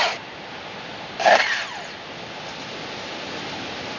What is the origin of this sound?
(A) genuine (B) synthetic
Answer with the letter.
A